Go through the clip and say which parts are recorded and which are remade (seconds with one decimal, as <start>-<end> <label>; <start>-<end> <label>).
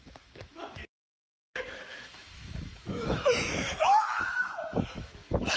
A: 0.0-0.8 remade; 0.8-1.9 recorded; 1.9-5.6 remade